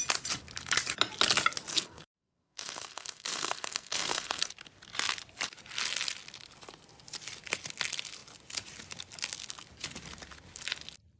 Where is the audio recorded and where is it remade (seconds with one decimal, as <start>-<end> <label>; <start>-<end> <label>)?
0.0-1.7 recorded; 1.7-4.5 remade; 4.5-11.2 recorded